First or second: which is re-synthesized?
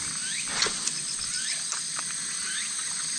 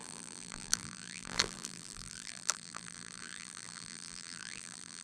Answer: second